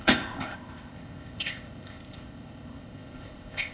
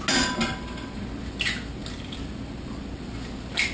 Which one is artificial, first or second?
first